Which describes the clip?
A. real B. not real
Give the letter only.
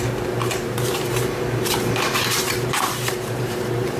B